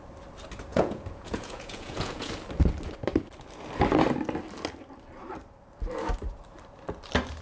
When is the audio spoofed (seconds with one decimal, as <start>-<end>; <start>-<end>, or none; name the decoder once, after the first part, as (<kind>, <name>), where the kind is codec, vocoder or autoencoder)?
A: 0.7-2.3 (vocoder, Vocos)